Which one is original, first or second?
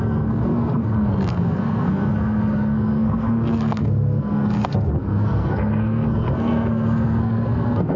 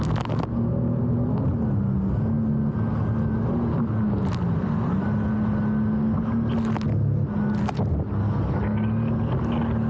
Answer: second